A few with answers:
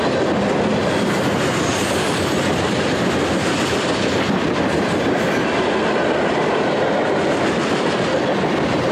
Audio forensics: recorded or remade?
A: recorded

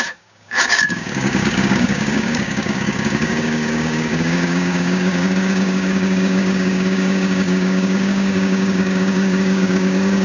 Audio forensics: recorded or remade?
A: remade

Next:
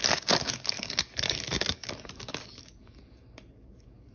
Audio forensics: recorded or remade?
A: remade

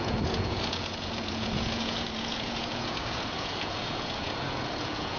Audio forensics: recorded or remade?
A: remade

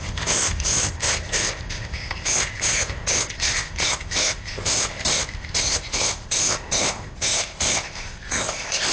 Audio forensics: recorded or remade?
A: remade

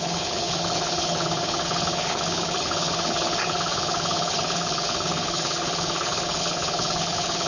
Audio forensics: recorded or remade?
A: remade